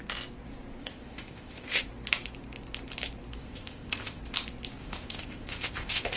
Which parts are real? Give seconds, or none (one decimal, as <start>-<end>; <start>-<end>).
0.0-0.8; 1.8-3.4; 4.2-4.8